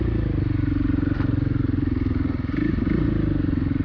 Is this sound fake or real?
real